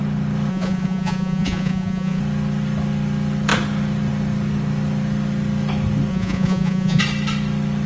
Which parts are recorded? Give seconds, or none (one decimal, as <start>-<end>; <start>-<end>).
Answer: 0.0-0.5; 2.2-6.1; 7.0-7.9